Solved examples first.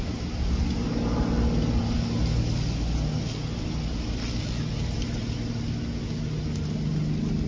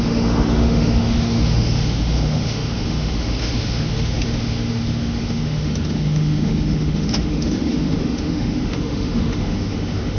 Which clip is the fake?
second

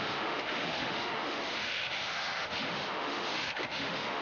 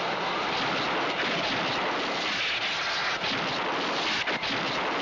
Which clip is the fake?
first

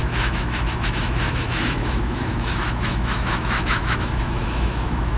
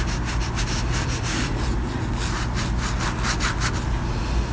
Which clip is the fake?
first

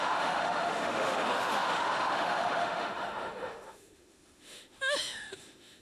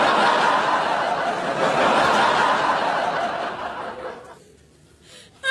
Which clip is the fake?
first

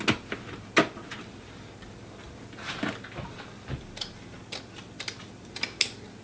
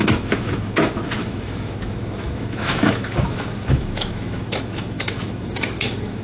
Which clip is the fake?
second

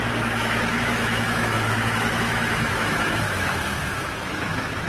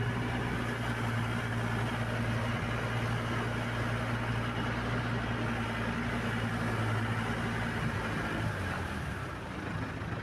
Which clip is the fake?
first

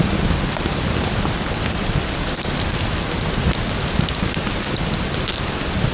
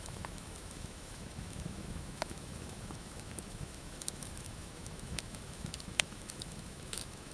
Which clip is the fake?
second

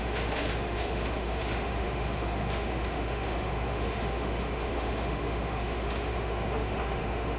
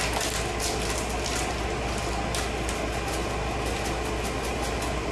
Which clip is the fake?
first